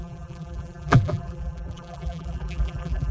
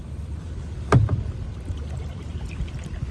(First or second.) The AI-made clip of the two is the first